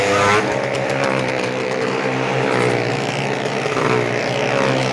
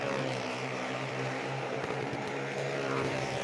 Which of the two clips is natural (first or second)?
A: first